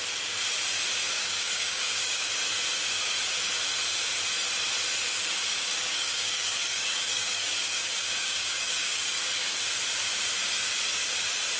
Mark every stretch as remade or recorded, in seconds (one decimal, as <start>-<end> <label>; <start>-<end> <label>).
0.0-1.1 recorded; 1.1-2.3 remade; 2.3-5.1 recorded; 5.1-9.6 remade; 9.6-11.6 recorded